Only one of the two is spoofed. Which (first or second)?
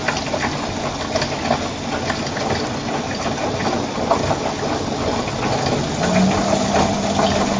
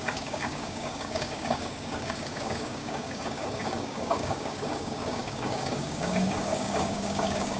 second